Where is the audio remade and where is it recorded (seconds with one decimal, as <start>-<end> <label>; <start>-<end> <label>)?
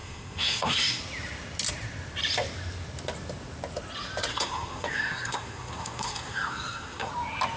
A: 0.0-1.0 remade; 1.0-4.3 recorded; 4.3-7.1 remade; 7.1-7.6 recorded